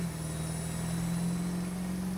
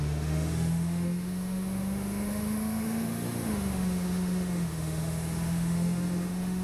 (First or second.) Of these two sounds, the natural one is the first